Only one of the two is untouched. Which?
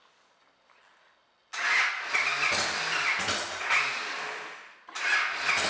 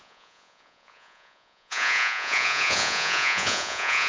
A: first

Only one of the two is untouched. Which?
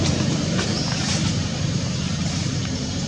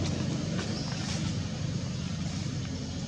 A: second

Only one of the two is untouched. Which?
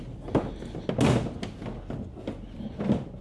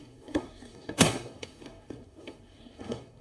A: first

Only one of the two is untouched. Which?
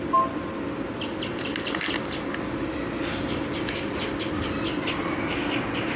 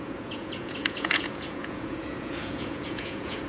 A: first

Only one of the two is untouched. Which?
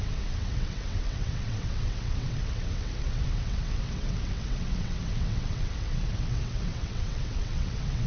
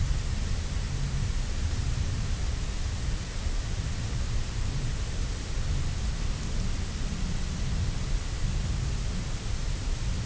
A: second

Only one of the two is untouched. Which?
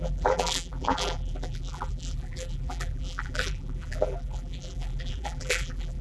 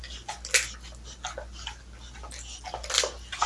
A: second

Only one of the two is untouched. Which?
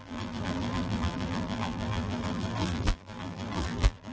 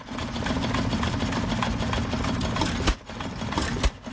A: second